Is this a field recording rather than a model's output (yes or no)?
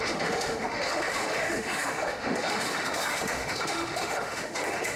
no